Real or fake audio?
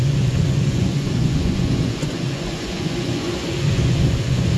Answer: fake